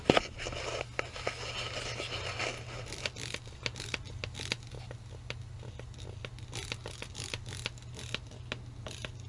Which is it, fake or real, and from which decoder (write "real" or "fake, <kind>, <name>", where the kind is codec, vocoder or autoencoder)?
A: real